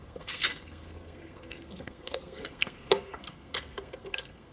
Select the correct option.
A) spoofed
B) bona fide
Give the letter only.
A